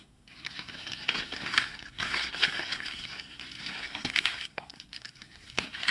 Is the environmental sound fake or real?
fake